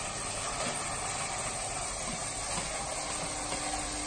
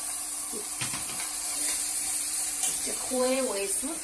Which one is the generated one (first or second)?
second